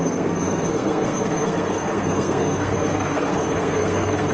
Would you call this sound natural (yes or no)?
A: no